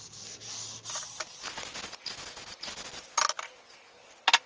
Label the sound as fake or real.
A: real